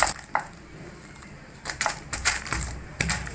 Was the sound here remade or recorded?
remade